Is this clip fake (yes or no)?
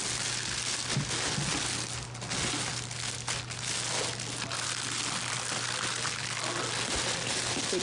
no